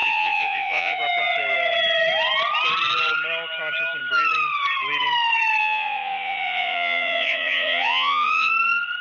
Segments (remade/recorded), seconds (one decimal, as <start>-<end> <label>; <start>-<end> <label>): 0.0-1.0 remade; 1.0-5.6 recorded; 5.6-8.5 remade; 8.5-9.0 recorded